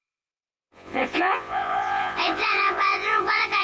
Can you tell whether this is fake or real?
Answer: fake